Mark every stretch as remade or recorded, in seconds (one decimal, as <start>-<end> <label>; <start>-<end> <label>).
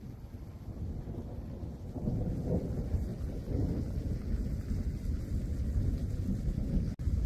0.0-7.3 recorded